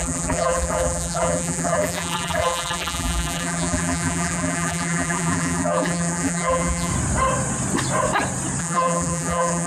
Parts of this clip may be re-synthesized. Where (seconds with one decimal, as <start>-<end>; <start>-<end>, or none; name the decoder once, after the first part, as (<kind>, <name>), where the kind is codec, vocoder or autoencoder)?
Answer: 0.0-6.9 (vocoder, BigVGAN v2); 8.6-9.7